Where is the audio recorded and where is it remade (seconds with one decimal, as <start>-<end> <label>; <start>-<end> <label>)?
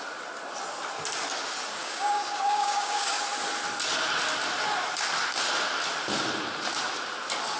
0.0-1.8 recorded; 1.8-3.2 remade; 3.2-7.6 recorded